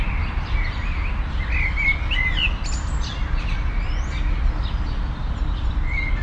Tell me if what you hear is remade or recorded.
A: recorded